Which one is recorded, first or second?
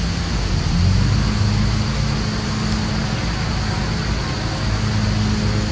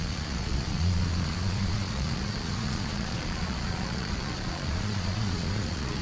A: first